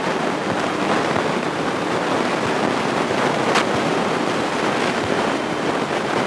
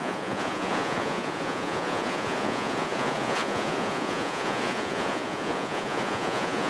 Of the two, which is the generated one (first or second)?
second